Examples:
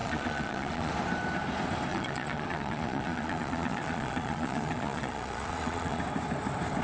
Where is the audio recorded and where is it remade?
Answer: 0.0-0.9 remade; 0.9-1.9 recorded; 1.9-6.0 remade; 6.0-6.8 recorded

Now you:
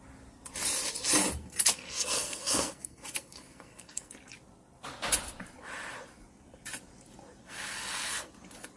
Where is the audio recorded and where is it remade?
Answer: 0.0-1.4 recorded; 1.4-4.1 remade; 4.1-7.4 recorded; 7.4-8.3 remade; 8.3-8.8 recorded

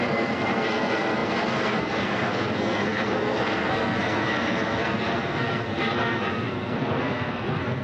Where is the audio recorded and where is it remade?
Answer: 0.0-7.8 remade

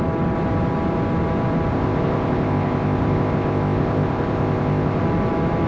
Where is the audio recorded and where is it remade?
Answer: 0.0-1.7 recorded; 1.7-5.0 remade; 5.0-5.7 recorded

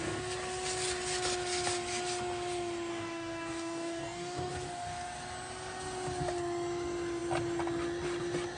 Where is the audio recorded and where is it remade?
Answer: 0.0-2.9 recorded; 2.9-4.5 remade; 4.5-8.6 recorded

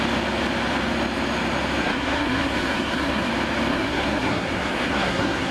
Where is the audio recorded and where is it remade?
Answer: 0.0-1.8 recorded; 1.8-3.3 remade; 3.3-3.7 recorded; 3.7-5.5 remade

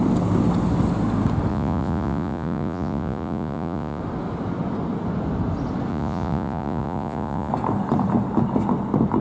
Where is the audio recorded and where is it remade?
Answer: 0.0-1.5 recorded; 1.5-4.0 remade; 4.0-5.9 recorded; 5.9-7.5 remade; 7.5-9.2 recorded